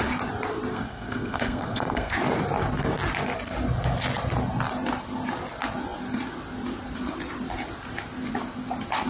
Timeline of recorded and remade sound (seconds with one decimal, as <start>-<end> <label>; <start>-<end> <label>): 0.0-0.7 recorded; 0.7-2.1 remade; 2.1-9.1 recorded